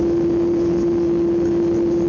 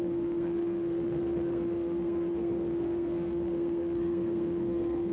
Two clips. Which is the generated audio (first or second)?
second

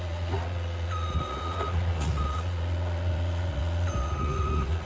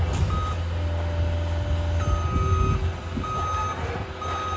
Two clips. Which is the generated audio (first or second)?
first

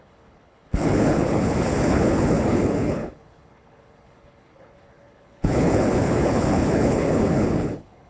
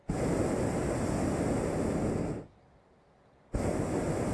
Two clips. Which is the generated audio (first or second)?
first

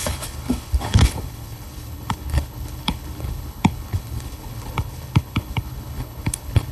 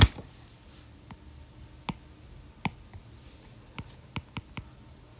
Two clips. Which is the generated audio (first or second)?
first